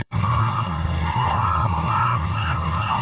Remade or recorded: remade